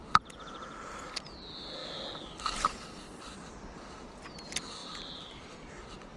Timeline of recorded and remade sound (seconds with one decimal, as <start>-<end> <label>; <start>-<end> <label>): 0.0-4.8 recorded; 4.8-5.7 remade; 5.7-6.2 recorded